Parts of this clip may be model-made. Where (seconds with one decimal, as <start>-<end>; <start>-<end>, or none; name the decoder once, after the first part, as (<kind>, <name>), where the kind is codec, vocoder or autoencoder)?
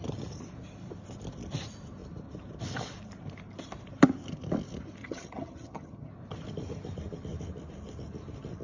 5.0-6.1 (vocoder, HiFi-GAN)